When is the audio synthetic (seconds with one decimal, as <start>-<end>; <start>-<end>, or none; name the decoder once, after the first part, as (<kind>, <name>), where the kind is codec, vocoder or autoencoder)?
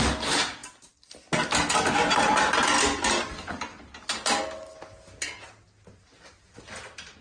none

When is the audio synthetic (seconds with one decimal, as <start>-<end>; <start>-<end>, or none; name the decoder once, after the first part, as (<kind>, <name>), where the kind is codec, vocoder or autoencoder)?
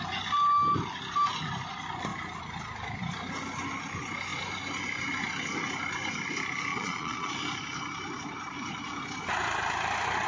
6.7-7.3 (vocoder, Vocos)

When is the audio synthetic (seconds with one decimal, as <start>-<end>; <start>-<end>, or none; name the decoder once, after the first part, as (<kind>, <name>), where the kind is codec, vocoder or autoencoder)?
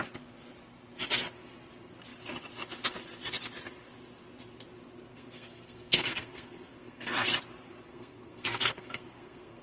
5.1-7.3 (codec, SNAC); 7.9-9.6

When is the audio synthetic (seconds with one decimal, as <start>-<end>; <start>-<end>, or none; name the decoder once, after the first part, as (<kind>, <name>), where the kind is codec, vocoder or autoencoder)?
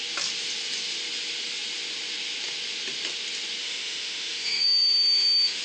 3.6-5.6 (autoencoder, DAC-VAE)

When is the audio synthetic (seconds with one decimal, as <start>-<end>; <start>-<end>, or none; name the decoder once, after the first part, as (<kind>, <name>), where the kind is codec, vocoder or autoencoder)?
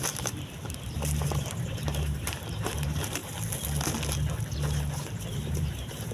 0.0-3.2 (vocoder, BigVGAN v2); 4.9-6.1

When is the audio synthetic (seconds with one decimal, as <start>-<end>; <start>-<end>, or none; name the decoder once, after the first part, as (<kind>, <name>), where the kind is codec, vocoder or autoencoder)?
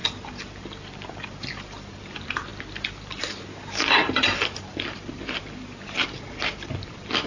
0.0-2.5 (vocoder, BigVGAN v2); 3.2-7.3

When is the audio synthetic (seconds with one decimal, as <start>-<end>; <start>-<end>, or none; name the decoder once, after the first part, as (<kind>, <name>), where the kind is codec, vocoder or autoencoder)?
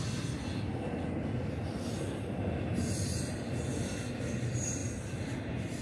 none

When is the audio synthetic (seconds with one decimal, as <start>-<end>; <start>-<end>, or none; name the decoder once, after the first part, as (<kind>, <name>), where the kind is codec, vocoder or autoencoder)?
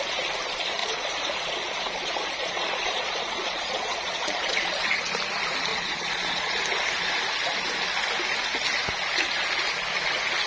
0.8-5.1 (vocoder, Vocos); 5.7-6.6